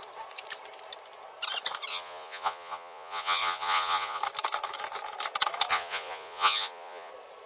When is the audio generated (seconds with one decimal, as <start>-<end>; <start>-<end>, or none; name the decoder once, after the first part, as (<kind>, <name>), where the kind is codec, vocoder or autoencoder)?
1.9-4.2 (vocoder, Vocos); 5.7-7.1